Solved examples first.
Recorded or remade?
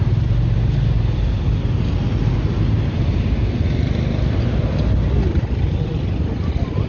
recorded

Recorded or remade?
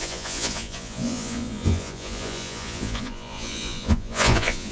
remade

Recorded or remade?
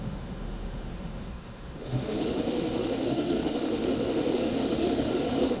remade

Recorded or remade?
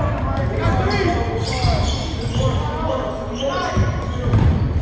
recorded